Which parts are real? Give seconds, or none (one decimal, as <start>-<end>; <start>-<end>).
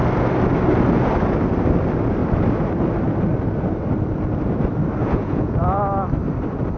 0.0-5.0; 5.8-6.8